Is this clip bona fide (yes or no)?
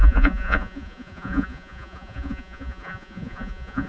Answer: no